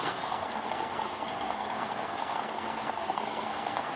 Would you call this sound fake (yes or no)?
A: yes